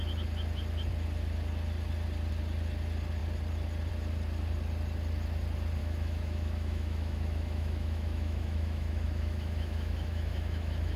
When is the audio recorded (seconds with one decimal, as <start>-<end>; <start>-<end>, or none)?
0.0-5.8